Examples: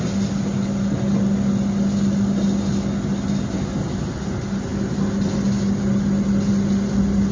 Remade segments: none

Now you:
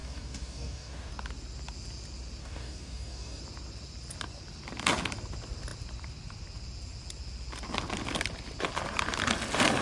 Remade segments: 0.0-1.1 (codec, DAC); 2.4-3.4

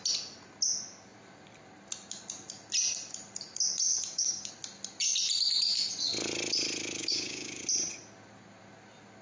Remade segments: 3.9-4.5 (codec, DAC); 7.0-7.6

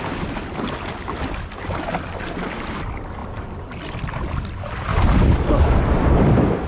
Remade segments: 4.9-5.6 (codec, DAC)

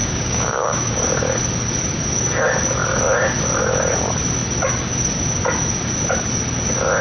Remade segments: 0.0-0.9 (codec, DAC)

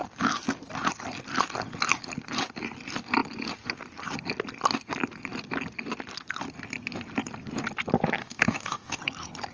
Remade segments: 8.2-9.0 (codec, DAC)

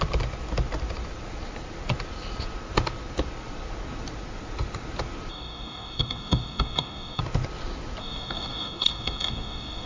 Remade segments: 5.3-7.2 (codec, DAC); 8.0-9.9